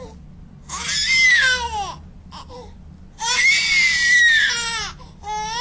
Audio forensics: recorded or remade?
recorded